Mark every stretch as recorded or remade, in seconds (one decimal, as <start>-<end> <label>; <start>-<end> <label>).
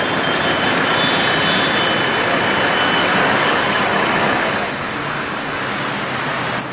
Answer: 0.0-3.0 recorded; 3.0-5.6 remade; 5.6-6.7 recorded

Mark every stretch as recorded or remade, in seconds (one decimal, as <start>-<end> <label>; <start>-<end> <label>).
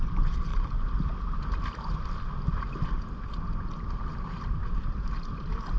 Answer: 0.0-0.5 remade; 0.5-3.7 recorded; 3.7-5.8 remade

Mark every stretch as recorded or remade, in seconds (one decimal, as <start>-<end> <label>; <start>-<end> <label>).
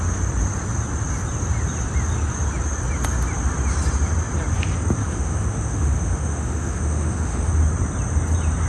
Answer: 0.0-5.0 recorded; 5.0-7.5 remade; 7.5-8.7 recorded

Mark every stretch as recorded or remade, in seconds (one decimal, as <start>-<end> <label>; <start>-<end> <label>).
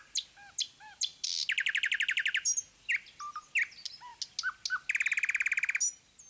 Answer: 0.0-6.3 recorded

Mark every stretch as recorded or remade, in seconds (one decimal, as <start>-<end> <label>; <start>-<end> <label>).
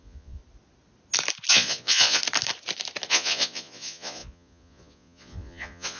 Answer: 0.0-0.4 remade; 0.4-1.5 recorded; 1.5-2.2 remade; 2.2-3.1 recorded; 3.1-6.0 remade